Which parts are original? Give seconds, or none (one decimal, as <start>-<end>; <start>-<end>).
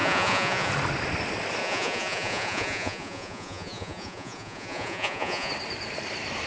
0.7-1.6; 5.5-6.5